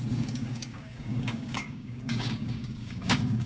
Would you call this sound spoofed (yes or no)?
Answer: yes